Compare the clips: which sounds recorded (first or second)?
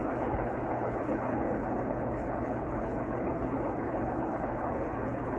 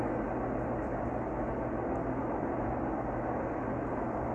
second